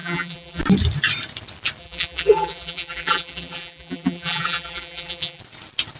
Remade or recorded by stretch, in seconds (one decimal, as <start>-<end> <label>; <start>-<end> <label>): 0.0-0.6 remade; 0.6-1.8 recorded; 1.8-5.4 remade; 5.4-6.0 recorded